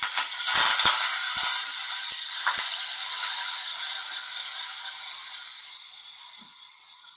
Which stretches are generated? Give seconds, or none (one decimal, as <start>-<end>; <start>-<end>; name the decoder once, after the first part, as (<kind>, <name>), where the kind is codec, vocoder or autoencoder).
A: none